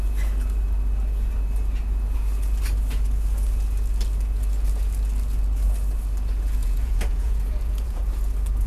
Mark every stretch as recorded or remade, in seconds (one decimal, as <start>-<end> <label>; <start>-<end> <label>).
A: 0.0-6.6 recorded; 6.6-8.0 remade; 8.0-8.7 recorded